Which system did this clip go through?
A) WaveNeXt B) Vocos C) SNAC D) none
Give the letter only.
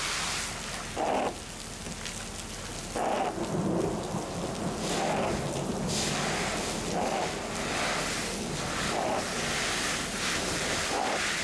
D